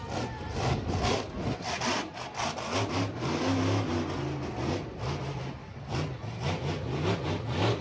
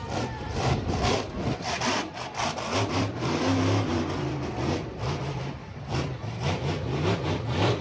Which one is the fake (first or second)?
second